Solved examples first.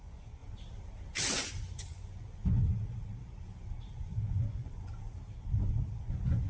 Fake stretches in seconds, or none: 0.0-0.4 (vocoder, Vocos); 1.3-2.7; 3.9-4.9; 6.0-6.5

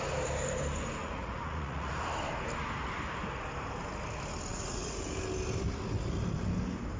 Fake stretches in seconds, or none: 1.0-1.9 (vocoder, Vocos); 4.5-5.0

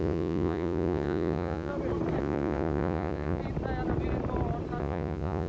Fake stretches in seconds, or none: 0.0-1.7 (vocoder, Vocos); 2.2-3.4; 4.8-5.5

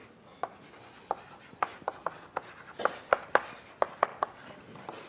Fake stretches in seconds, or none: none

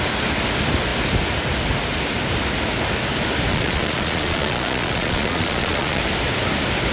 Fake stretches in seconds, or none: 3.5-6.0 (vocoder, Vocos)

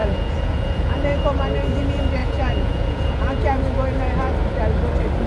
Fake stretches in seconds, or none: 0.0-1.2 (vocoder, Vocos); 2.2-3.2